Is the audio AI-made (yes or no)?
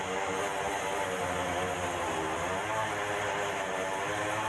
no